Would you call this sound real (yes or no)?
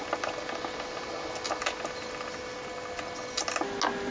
yes